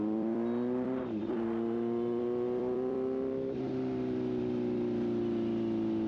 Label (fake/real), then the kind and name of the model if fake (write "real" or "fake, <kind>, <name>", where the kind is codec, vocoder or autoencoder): fake, vocoder, BigVGAN v2